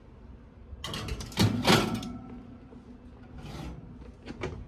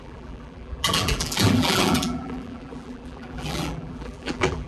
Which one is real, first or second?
first